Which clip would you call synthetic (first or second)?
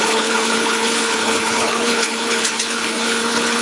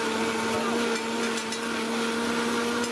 first